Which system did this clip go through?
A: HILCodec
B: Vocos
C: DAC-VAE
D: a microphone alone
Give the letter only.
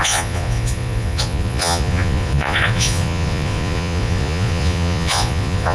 B